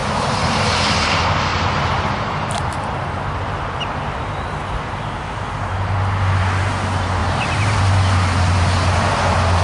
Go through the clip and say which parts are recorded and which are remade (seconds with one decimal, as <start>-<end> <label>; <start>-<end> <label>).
0.0-1.1 remade; 1.1-1.5 recorded; 1.5-2.9 remade; 2.9-9.6 recorded

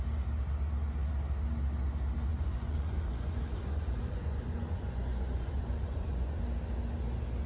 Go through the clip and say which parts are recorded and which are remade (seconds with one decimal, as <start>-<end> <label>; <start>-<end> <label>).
0.0-2.3 recorded; 2.3-6.4 remade; 6.4-7.5 recorded

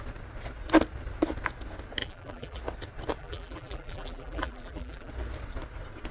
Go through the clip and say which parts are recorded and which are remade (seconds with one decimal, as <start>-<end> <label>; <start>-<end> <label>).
0.0-2.0 recorded; 2.0-2.6 remade; 2.6-3.2 recorded; 3.2-5.1 remade; 5.1-6.1 recorded

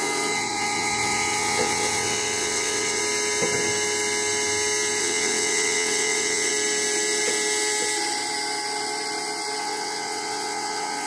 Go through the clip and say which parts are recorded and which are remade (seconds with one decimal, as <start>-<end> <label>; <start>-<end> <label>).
0.0-3.0 remade; 3.0-5.0 recorded; 5.0-6.5 remade; 6.5-9.6 recorded; 9.6-11.1 remade

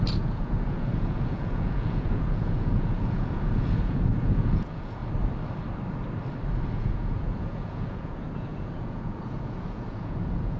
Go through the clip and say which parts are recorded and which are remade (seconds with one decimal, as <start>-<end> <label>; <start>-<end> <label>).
0.0-5.0 remade; 5.0-6.7 recorded; 6.7-10.6 remade

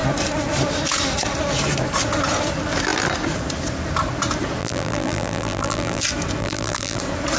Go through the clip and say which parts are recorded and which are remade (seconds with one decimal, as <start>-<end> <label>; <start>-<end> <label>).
0.0-4.6 recorded; 4.6-6.0 remade; 6.0-6.4 recorded; 6.4-7.0 remade; 7.0-7.4 recorded

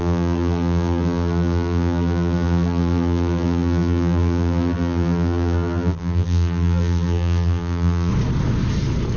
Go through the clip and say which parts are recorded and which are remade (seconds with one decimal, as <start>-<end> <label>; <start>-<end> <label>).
0.0-8.1 remade; 8.1-9.2 recorded

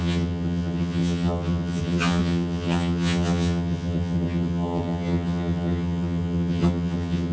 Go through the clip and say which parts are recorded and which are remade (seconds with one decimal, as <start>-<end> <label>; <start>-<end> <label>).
0.0-7.3 remade